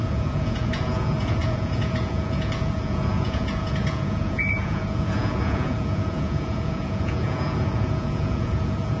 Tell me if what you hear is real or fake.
fake